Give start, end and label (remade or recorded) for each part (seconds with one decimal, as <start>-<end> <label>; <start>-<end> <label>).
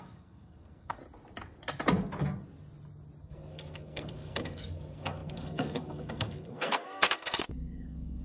0.0-1.0 remade; 1.0-3.2 recorded; 3.2-8.2 remade